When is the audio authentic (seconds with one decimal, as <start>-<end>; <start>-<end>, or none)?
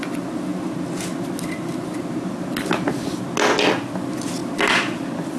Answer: 0.0-5.4